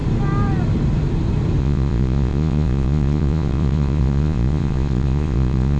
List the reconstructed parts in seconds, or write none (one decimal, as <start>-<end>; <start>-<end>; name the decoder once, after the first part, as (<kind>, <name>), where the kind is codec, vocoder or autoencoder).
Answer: 1.6-5.8 (vocoder, Vocos)